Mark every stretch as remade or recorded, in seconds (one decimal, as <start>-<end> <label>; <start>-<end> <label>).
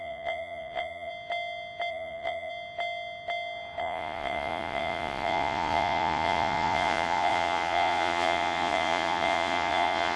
0.0-1.1 remade; 1.1-1.9 recorded; 1.9-2.5 remade; 2.5-3.8 recorded; 3.8-10.2 remade